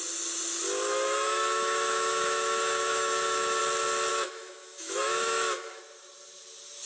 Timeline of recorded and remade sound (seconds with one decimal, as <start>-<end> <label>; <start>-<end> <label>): 0.0-0.9 recorded; 0.9-3.6 remade; 3.6-4.1 recorded; 4.1-5.8 remade; 5.8-6.9 recorded